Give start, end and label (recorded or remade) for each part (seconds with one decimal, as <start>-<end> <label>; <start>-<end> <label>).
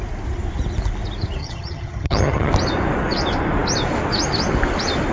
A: 0.0-1.4 recorded; 1.4-2.5 remade; 2.5-5.1 recorded